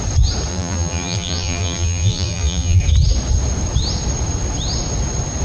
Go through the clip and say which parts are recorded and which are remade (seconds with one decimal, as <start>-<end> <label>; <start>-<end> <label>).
0.0-0.5 recorded; 0.5-2.8 remade; 2.8-5.4 recorded